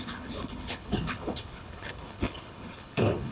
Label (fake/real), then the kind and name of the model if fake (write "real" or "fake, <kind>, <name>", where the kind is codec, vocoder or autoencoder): fake, codec, HILCodec